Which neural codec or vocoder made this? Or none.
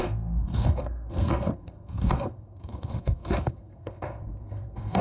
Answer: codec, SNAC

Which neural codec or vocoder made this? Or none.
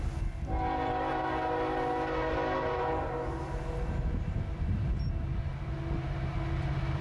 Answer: none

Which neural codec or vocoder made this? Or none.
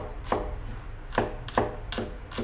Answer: none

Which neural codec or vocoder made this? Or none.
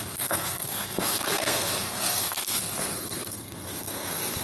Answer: codec, SNAC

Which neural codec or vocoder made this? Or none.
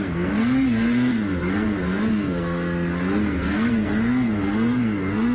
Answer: codec, SNAC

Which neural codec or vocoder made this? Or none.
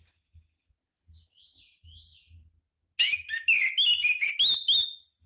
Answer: none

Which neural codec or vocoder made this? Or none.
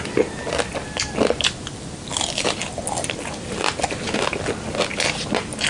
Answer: none